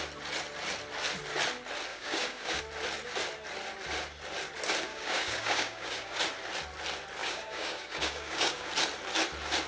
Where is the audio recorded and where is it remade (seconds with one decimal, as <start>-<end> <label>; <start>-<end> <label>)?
0.0-1.9 recorded; 1.9-2.6 remade; 2.6-4.9 recorded; 4.9-6.2 remade; 6.2-7.2 recorded; 7.2-8.7 remade; 8.7-9.7 recorded